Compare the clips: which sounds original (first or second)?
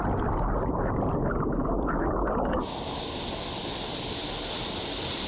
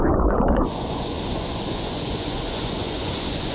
first